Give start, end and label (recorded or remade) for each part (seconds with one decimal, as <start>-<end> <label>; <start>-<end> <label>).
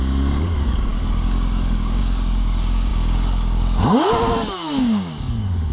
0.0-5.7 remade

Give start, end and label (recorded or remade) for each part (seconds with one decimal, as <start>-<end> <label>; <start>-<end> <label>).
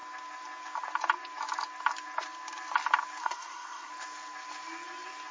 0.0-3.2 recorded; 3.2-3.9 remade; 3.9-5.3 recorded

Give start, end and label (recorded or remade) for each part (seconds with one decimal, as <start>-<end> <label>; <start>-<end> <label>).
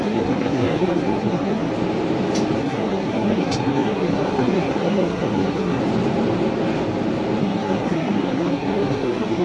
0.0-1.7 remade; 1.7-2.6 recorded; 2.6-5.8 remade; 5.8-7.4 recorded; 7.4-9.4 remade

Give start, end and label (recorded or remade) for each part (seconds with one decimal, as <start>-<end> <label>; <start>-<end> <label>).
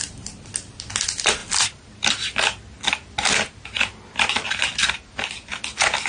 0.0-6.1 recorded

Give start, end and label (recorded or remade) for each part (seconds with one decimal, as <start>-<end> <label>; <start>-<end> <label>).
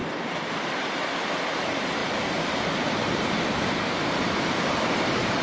0.0-1.3 recorded; 1.3-5.4 remade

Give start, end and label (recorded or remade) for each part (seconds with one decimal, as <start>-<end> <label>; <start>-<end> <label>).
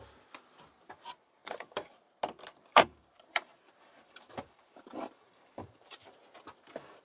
0.0-1.4 recorded; 1.4-2.0 remade; 2.0-2.7 recorded; 2.7-6.2 remade; 6.2-7.0 recorded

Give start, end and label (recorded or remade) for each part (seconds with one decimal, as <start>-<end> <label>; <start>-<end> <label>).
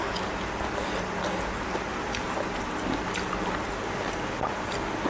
0.0-5.1 recorded